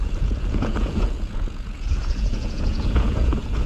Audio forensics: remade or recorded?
remade